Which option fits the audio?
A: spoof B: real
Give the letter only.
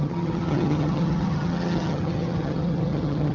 A